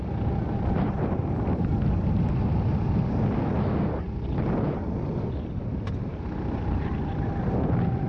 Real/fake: real